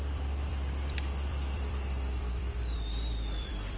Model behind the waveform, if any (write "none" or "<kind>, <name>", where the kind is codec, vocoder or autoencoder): vocoder, BigVGAN v2